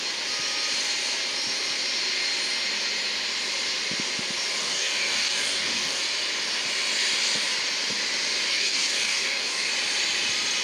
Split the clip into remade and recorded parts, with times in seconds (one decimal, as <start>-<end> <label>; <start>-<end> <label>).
0.0-4.6 recorded; 4.6-6.0 remade; 6.0-8.5 recorded; 8.5-9.7 remade; 9.7-10.6 recorded

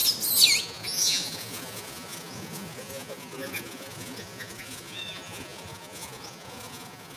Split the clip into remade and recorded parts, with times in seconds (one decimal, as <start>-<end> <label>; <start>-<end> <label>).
0.0-0.6 recorded; 0.6-7.2 remade